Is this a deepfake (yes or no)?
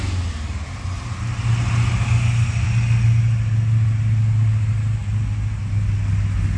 no